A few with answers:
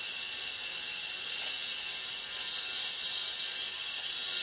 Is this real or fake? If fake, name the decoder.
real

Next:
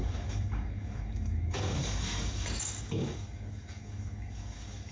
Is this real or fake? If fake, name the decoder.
fake, codec, DAC